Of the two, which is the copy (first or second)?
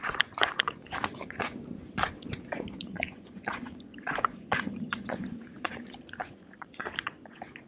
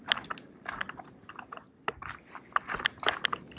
first